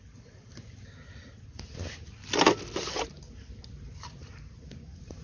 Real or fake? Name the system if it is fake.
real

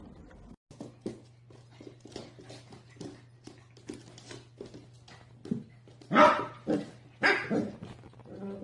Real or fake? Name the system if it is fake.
real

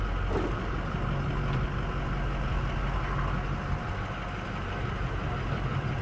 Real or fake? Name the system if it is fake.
real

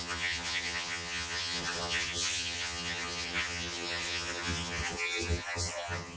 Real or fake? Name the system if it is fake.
fake, vocoder, HiFi-GAN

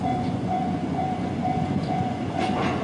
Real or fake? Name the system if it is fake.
fake, vocoder, Vocos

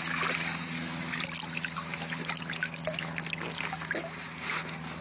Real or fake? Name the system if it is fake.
real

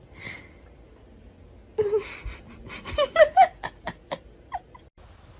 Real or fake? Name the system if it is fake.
real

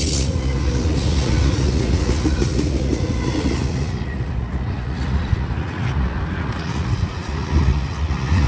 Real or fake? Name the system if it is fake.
fake, vocoder, Vocos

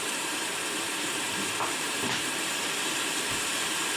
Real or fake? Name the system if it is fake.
fake, vocoder, BigVGAN v2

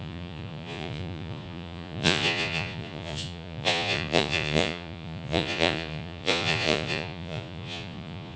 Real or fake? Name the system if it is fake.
fake, vocoder, Vocos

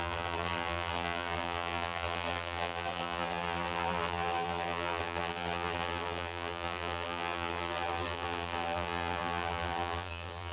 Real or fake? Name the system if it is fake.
fake, vocoder, BigVGAN v2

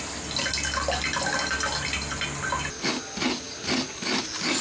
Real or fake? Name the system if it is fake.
real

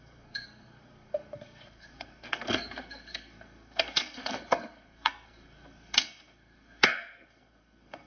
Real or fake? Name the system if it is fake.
fake, codec, SNAC